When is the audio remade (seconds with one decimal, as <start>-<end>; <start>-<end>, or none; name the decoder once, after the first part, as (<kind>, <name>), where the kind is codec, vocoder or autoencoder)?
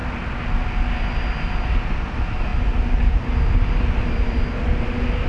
none